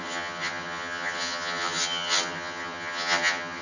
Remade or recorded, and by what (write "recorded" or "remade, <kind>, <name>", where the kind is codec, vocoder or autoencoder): remade, vocoder, HiFi-GAN